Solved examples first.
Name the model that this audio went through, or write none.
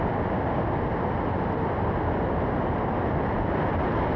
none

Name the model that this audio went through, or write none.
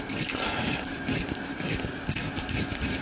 none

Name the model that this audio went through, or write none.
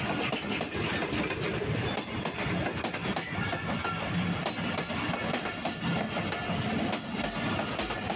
none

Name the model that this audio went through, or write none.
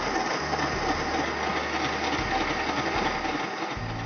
none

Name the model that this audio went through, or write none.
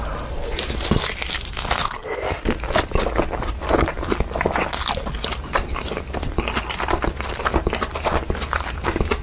none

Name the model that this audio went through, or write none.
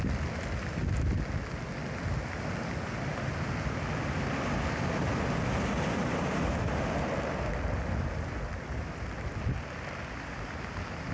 none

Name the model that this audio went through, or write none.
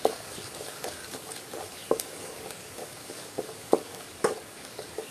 codec, DAC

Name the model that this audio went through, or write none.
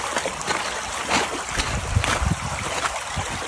none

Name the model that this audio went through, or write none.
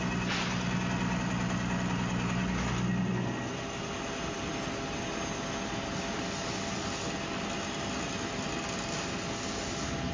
none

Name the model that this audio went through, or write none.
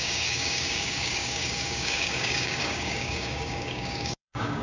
codec, DAC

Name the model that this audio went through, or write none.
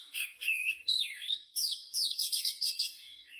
codec, DAC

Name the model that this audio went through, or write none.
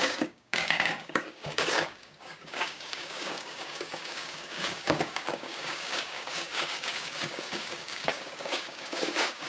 codec, DAC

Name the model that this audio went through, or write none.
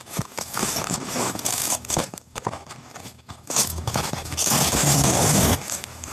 codec, DAC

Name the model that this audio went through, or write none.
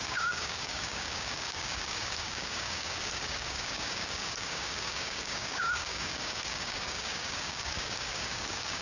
codec, DAC